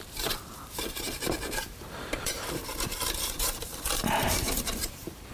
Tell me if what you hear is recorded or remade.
remade